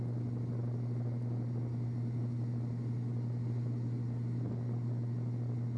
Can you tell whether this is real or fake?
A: real